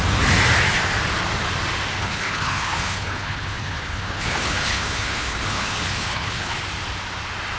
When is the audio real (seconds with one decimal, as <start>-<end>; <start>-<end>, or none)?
0.0-2.0; 6.6-7.6